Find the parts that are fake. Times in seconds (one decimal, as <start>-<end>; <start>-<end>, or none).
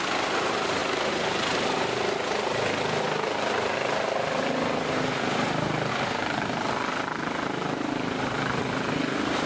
none